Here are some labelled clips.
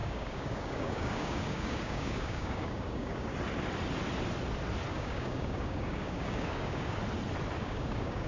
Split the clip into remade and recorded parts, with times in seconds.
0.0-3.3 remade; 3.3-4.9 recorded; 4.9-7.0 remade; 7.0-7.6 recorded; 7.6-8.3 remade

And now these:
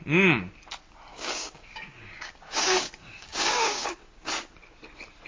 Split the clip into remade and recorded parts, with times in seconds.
0.0-1.1 recorded; 1.1-4.3 remade; 4.3-5.3 recorded

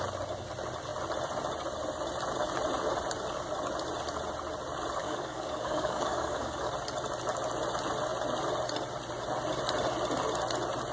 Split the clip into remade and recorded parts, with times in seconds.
0.0-5.0 recorded; 5.0-6.7 remade; 6.7-10.9 recorded

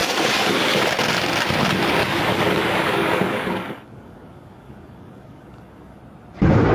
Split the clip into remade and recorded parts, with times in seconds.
0.0-0.9 remade; 0.9-2.0 recorded; 2.0-6.0 remade; 6.0-6.7 recorded

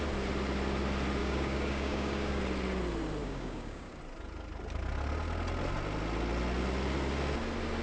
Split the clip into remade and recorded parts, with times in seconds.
0.0-1.2 recorded; 1.2-2.4 remade; 2.4-3.2 recorded; 3.2-4.0 remade; 4.0-7.8 recorded